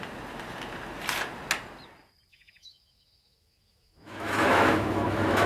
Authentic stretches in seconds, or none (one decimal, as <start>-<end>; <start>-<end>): 0.0-2.3